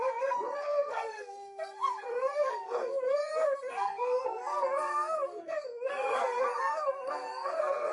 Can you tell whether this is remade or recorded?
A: remade